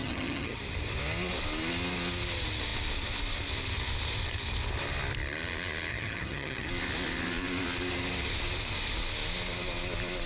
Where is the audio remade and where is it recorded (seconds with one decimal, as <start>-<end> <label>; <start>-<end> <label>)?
0.0-0.6 remade; 0.6-5.9 recorded; 5.9-6.7 remade; 6.7-10.3 recorded